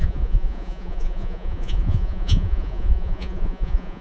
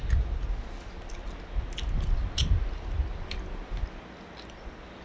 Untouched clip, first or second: second